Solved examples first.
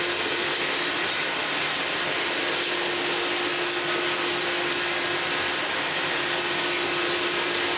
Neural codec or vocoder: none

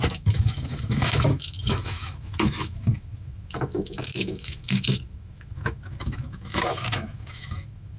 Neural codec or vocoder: autoencoder, DAC-VAE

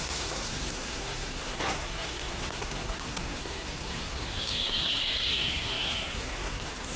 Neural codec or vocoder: codec, SNAC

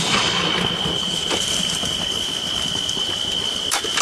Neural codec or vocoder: none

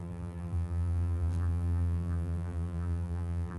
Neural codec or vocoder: vocoder, BigVGAN v2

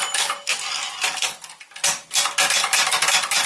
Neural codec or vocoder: none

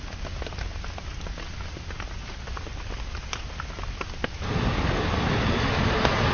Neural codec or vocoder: none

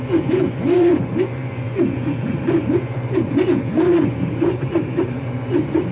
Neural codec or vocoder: vocoder, Vocos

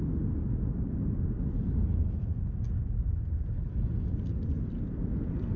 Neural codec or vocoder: none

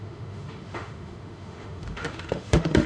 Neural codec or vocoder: autoencoder, DAC-VAE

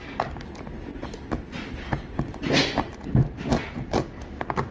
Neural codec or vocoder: none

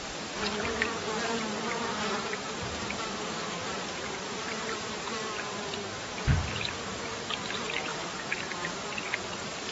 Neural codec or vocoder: vocoder, BigVGAN v2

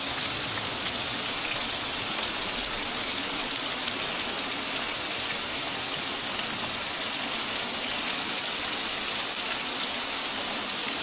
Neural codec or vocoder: none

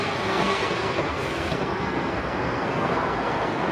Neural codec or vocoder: codec, SNAC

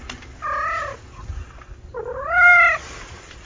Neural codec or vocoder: none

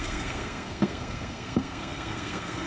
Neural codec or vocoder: codec, SNAC